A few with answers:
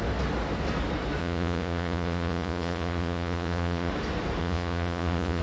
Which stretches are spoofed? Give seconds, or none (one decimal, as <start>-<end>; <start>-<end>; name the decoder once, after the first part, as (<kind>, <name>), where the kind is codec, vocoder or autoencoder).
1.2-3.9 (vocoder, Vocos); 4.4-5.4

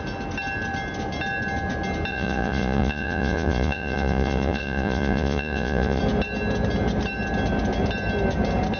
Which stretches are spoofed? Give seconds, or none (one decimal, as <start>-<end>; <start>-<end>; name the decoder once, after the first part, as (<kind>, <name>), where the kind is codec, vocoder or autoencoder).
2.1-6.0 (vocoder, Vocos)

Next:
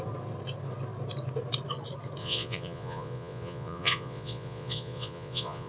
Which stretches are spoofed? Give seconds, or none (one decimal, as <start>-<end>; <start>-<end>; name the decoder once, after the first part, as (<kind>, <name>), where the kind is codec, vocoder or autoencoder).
2.2-5.7 (vocoder, Vocos)

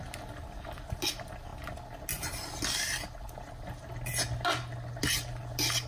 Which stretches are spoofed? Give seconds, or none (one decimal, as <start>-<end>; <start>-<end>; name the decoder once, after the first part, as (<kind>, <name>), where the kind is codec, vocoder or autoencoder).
none